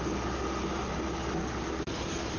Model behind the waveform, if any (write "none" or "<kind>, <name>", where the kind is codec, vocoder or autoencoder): none